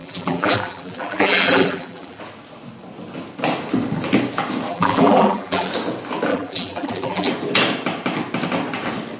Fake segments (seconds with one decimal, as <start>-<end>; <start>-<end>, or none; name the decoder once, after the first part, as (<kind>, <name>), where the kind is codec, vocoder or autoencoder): 0.0-2.2 (vocoder, BigVGAN v2); 4.7-5.7; 6.3-7.3